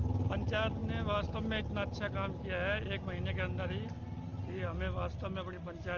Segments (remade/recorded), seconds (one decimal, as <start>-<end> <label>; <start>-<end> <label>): 0.0-6.0 recorded